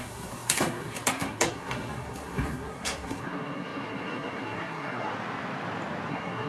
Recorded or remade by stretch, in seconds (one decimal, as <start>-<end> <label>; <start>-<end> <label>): 0.0-5.1 remade; 5.1-6.1 recorded; 6.1-6.5 remade